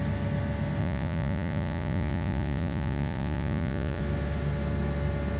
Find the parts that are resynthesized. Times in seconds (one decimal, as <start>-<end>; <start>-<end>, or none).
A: 0.8-4.0